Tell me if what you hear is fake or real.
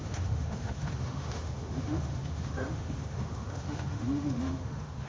fake